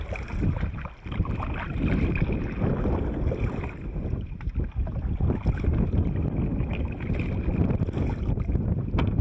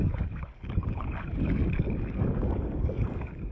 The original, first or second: first